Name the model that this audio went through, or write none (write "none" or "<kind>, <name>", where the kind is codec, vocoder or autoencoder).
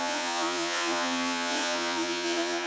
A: vocoder, Vocos